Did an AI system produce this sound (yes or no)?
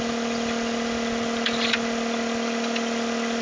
no